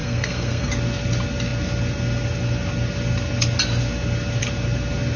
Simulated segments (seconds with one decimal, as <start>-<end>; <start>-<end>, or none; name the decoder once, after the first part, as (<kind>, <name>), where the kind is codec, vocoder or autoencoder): 0.0-0.7 (codec, SNAC)